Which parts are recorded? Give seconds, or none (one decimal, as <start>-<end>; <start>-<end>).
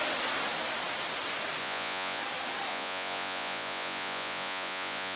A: 0.0-1.6; 2.2-2.7